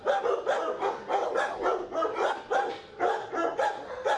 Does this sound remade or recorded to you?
recorded